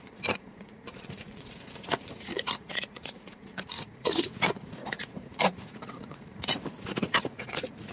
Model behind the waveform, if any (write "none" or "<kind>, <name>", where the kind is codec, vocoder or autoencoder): vocoder, Vocos